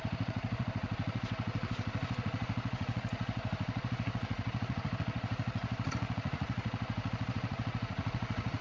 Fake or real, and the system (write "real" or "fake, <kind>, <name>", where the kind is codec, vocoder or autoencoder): fake, vocoder, Vocos